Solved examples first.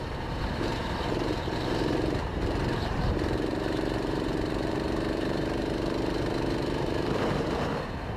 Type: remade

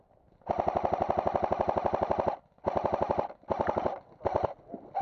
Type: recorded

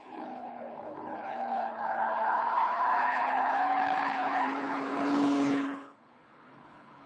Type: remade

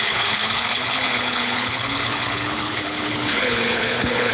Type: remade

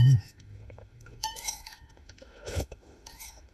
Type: remade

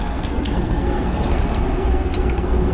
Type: remade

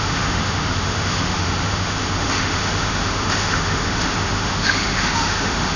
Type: remade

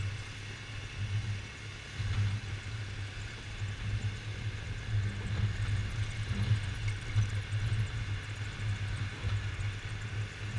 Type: recorded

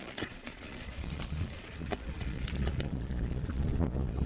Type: remade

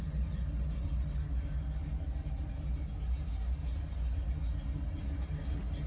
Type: recorded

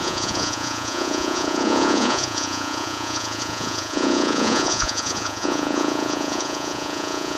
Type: remade